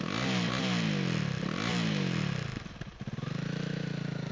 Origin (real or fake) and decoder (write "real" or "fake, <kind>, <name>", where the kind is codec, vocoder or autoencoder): real